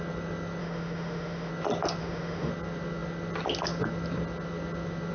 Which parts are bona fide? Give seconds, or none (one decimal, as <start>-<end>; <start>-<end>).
0.0-0.6; 1.5-2.0; 2.5-5.1